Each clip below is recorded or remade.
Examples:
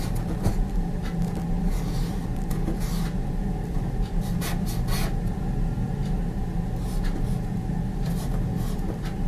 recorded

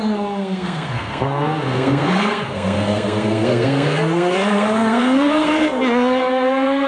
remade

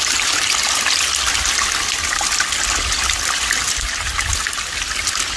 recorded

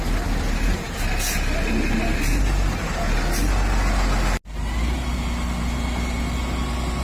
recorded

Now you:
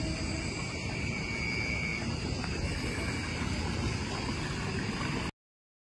recorded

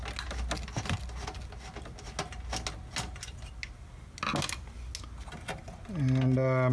recorded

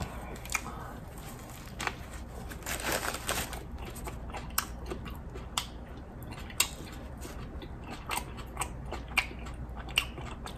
recorded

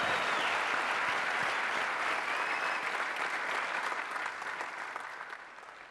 recorded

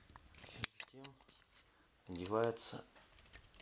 recorded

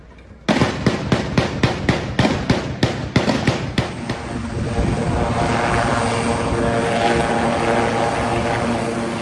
recorded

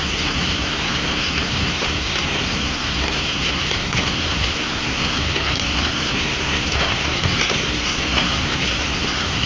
remade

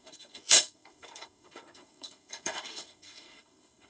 remade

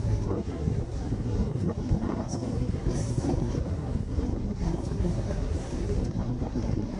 remade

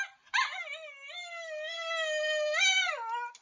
recorded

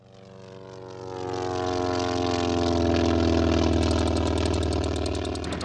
recorded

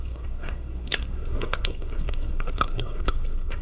remade